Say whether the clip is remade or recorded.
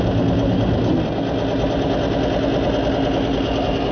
recorded